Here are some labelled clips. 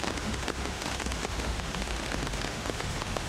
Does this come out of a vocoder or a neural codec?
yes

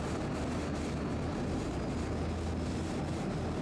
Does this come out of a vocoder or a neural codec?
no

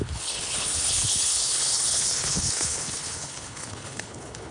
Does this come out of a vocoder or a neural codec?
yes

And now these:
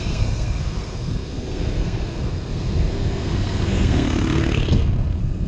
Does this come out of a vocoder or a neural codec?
yes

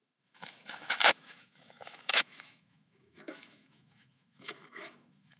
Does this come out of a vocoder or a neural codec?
yes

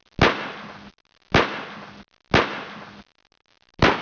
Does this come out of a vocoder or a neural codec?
no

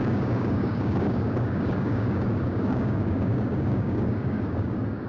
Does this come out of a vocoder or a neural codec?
yes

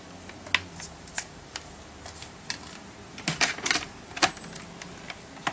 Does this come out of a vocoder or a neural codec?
no